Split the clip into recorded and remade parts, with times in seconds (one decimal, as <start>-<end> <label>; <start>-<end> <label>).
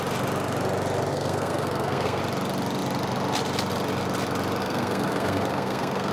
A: 0.0-1.1 recorded; 1.1-2.2 remade; 2.2-4.6 recorded; 4.6-6.1 remade